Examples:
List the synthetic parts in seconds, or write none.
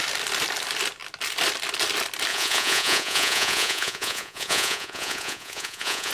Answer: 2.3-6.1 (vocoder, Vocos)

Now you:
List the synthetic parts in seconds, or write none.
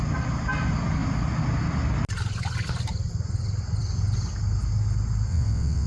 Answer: 5.3-5.9 (vocoder, WaveNeXt)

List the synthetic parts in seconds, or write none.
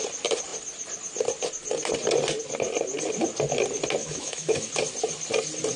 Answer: 4.0-4.7 (autoencoder, DAC-VAE)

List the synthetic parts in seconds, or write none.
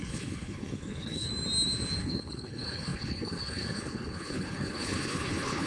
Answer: 0.0-1.3 (codec, HILCodec); 2.0-5.7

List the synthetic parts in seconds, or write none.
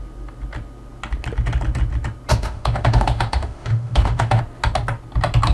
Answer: 2.3-4.4 (autoencoder, DAC-VAE)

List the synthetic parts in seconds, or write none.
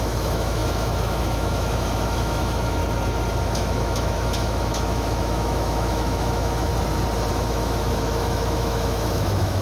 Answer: 0.0-2.8 (autoencoder, DAC-VAE); 3.4-6.7; 7.3-9.6